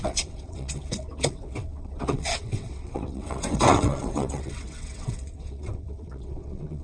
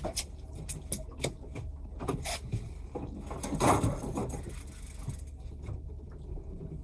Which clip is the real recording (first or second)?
second